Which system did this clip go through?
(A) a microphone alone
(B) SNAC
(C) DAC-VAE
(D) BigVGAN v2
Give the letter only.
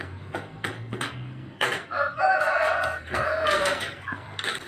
B